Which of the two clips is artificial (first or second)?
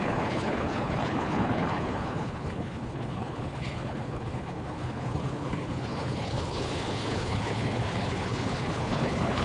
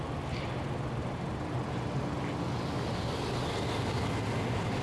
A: first